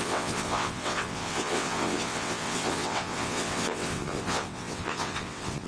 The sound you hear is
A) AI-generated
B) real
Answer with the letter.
A